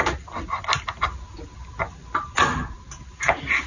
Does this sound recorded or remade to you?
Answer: recorded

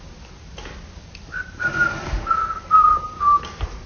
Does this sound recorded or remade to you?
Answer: remade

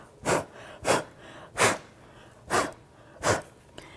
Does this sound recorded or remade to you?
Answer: recorded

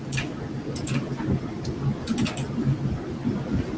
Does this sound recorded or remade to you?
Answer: recorded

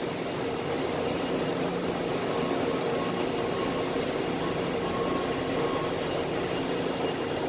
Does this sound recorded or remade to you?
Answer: recorded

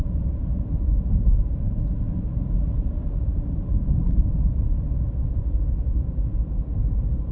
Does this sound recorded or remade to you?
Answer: remade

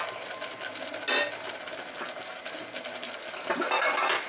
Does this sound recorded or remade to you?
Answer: recorded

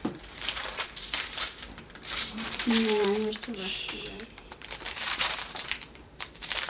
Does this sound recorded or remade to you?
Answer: remade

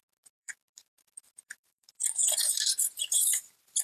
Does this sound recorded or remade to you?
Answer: remade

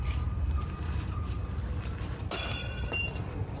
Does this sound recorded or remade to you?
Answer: recorded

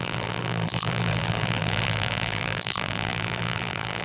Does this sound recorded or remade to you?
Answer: remade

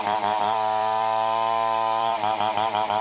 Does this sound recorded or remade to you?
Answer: remade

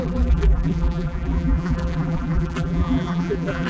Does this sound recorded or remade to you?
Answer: remade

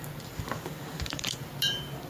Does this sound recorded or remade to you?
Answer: remade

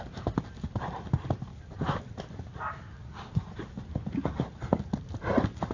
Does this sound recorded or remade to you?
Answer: recorded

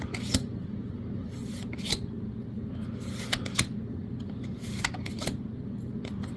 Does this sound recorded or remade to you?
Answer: remade